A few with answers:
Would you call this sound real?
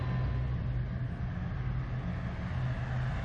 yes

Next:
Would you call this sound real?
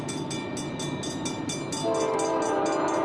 yes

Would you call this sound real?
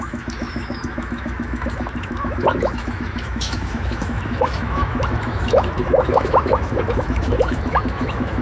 no